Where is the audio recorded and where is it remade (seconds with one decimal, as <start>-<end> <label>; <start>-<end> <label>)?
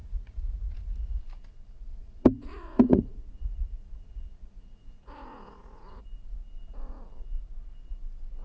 0.0-1.2 remade; 1.2-1.9 recorded; 1.9-6.0 remade; 6.0-8.4 recorded